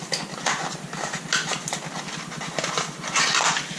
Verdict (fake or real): real